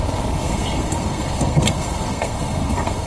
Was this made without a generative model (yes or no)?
no